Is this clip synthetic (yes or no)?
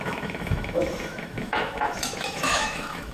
yes